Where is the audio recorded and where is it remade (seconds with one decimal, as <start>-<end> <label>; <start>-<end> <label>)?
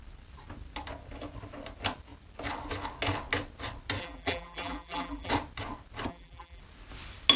0.0-4.0 recorded; 4.0-5.3 remade; 5.3-6.1 recorded; 6.1-6.6 remade; 6.6-7.4 recorded